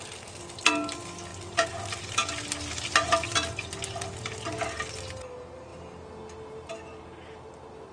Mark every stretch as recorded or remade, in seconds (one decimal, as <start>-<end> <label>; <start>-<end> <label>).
0.0-7.9 recorded